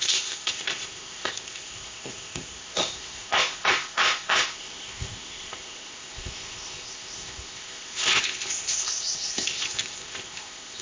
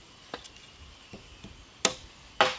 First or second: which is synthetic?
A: first